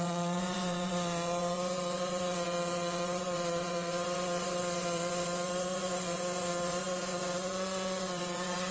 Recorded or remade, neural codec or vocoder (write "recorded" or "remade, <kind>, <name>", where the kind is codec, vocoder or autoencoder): remade, vocoder, Vocos